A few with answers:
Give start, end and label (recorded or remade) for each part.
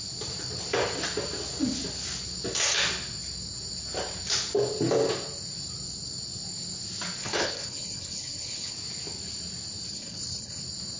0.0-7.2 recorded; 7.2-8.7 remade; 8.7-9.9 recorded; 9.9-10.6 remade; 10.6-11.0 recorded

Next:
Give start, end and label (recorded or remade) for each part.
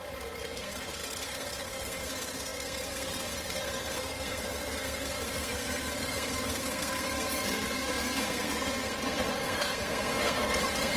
0.0-11.0 remade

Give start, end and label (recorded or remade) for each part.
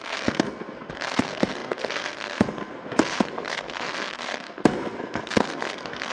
0.0-6.1 remade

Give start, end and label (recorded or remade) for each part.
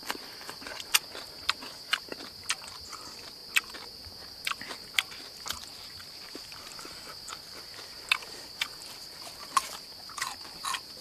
0.0-0.9 remade; 0.9-11.0 recorded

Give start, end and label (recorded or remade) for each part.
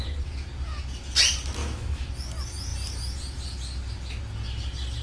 0.0-1.6 recorded; 1.6-2.1 remade; 2.1-5.0 recorded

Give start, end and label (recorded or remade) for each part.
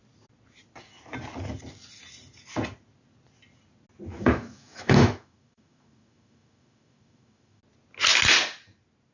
0.0-4.1 recorded; 4.1-7.6 remade; 7.6-9.1 recorded